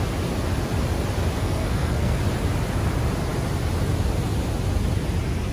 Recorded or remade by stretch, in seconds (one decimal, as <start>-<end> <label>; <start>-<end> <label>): 0.0-1.4 recorded; 1.4-2.2 remade; 2.2-5.5 recorded

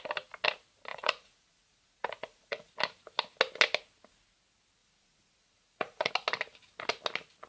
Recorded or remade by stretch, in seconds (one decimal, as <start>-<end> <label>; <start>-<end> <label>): 0.0-0.9 recorded; 0.9-2.7 remade; 2.7-4.8 recorded; 4.8-6.1 remade; 6.1-7.5 recorded

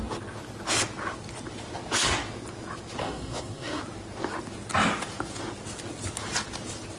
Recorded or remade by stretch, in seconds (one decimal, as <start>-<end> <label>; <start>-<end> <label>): 0.0-3.0 recorded; 3.0-3.8 remade; 3.8-7.0 recorded

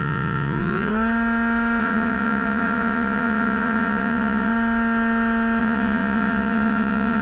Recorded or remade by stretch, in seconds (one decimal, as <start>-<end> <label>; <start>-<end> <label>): 0.0-0.9 remade; 0.9-1.8 recorded; 1.8-4.5 remade; 4.5-5.6 recorded; 5.6-7.2 remade

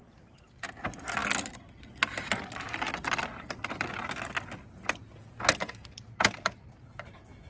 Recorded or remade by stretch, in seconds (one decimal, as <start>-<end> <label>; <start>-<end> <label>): 0.0-7.5 recorded

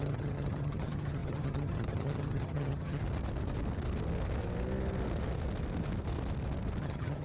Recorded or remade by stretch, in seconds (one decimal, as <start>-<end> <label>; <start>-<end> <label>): 0.0-3.0 remade; 3.0-6.8 recorded; 6.8-7.2 remade

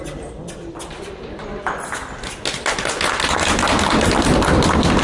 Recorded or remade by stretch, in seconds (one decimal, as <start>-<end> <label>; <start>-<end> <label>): 0.0-5.0 recorded

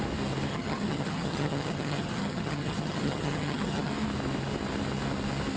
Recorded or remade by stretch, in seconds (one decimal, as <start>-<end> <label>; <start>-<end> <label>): 0.0-0.5 recorded; 0.5-3.9 remade; 3.9-5.6 recorded